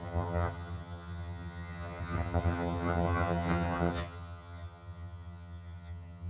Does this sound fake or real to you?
fake